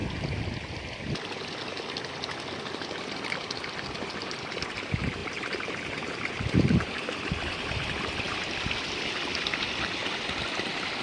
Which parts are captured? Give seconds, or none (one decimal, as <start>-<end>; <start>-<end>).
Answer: 0.0-5.2; 8.5-11.0